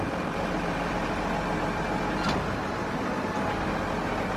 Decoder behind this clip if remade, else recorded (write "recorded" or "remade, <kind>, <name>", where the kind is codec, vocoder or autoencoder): recorded